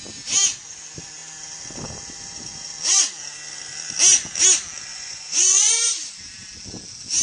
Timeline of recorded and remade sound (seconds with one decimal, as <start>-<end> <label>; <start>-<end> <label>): 0.0-4.9 recorded; 4.9-5.7 remade; 5.7-7.2 recorded